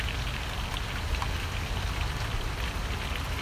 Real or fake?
real